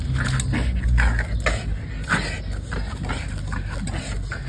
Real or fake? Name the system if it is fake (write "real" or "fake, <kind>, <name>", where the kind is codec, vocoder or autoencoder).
real